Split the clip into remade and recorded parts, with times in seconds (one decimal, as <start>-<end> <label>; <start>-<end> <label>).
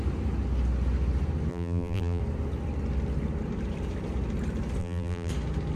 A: 0.0-1.5 recorded; 1.5-2.2 remade; 2.2-4.8 recorded; 4.8-5.3 remade; 5.3-5.8 recorded